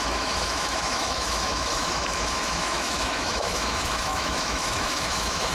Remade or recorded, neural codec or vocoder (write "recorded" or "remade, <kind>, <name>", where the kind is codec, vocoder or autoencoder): remade, autoencoder, DAC-VAE